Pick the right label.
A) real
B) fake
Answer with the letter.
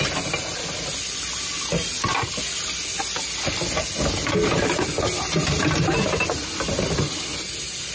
A